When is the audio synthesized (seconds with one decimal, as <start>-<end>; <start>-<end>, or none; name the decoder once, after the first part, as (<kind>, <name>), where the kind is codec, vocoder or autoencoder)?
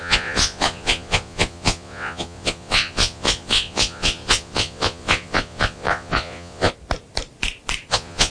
0.0-6.7 (vocoder, Vocos); 7.9-8.3